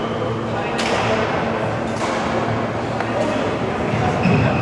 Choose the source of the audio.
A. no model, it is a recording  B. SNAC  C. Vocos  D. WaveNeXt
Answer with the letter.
A